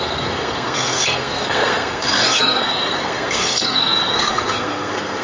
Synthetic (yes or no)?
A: yes